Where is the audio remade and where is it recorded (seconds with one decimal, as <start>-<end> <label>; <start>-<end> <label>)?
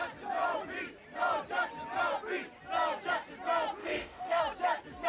0.0-3.8 recorded; 3.8-4.4 remade; 4.4-5.1 recorded